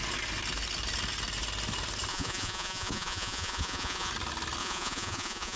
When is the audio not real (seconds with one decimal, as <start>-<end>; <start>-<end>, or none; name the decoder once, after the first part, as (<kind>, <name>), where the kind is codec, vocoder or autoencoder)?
2.1-4.1 (vocoder, Vocos); 4.6-5.6